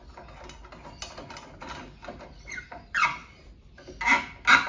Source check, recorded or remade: recorded